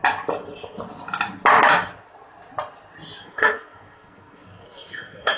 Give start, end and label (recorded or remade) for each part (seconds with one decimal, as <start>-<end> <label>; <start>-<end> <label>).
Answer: 0.0-3.2 recorded; 3.2-5.4 remade